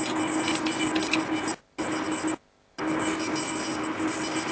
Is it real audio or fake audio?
real